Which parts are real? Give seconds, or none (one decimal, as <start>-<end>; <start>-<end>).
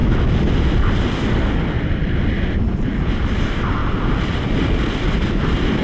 0.0-3.8; 4.5-5.8